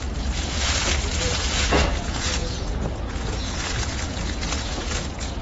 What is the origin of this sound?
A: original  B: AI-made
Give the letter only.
B